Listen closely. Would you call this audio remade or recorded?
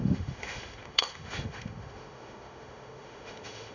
remade